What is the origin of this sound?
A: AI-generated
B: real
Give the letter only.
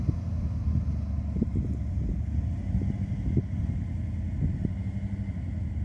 B